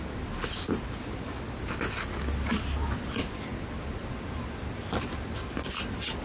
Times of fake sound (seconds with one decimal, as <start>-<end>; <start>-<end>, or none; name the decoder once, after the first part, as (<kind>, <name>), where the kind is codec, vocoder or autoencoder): none